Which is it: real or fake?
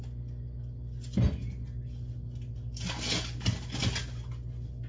real